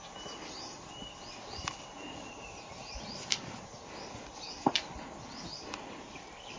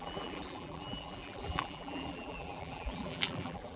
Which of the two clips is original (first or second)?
first